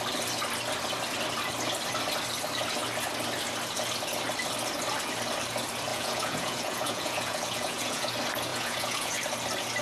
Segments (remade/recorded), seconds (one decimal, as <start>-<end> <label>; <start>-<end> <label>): 0.0-5.9 recorded; 5.9-8.1 remade; 8.1-8.5 recorded; 8.5-9.2 remade; 9.2-9.8 recorded